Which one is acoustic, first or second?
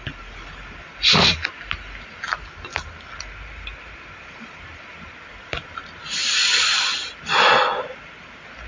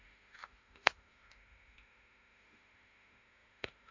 first